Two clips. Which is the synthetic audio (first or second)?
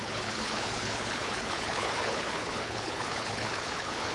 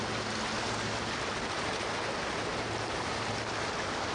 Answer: first